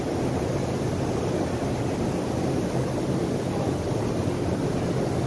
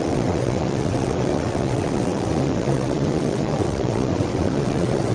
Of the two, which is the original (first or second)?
first